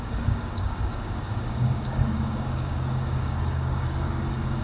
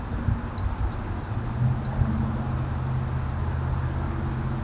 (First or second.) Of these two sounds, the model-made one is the first